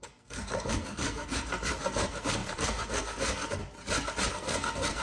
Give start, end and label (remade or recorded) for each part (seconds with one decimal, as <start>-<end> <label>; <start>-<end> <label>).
0.0-3.6 remade; 3.6-4.3 recorded; 4.3-5.0 remade